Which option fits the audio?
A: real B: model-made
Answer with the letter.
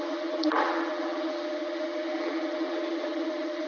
B